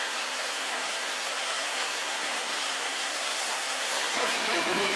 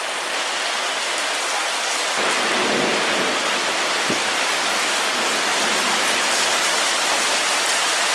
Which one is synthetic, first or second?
first